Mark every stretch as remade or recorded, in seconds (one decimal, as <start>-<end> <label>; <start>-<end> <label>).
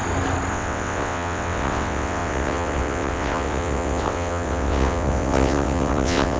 0.0-0.5 recorded; 0.5-6.4 remade